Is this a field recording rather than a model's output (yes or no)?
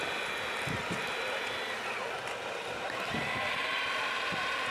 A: yes